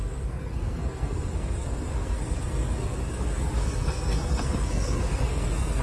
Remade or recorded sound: remade